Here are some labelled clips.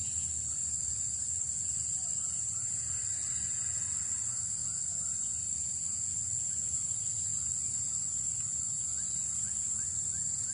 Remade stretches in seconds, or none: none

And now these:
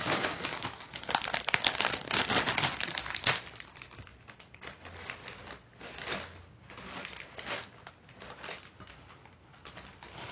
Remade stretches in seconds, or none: none

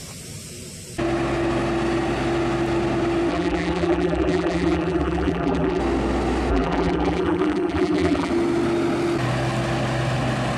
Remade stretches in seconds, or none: 3.3-5.8 (vocoder, BigVGAN v2); 6.5-8.3

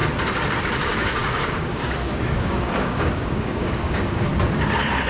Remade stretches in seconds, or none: 0.6-4.3 (codec, DAC)

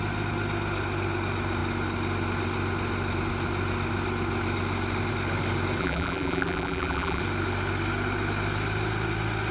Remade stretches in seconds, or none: 5.8-7.2 (vocoder, BigVGAN v2)

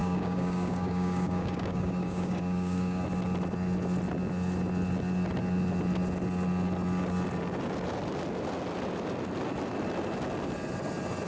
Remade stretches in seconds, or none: 0.0-3.0 (codec, DAC)

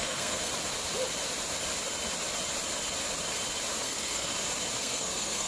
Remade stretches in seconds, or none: 0.0-0.5 (codec, SNAC); 3.8-4.3; 4.8-5.5